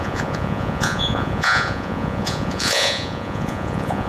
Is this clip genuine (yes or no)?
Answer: no